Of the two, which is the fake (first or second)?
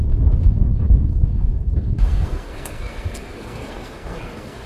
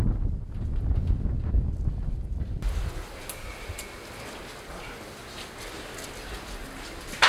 first